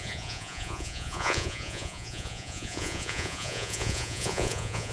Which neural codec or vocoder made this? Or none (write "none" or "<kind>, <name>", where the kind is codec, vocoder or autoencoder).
vocoder, Vocos